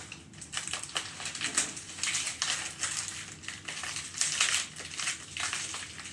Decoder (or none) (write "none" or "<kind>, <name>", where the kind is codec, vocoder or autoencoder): none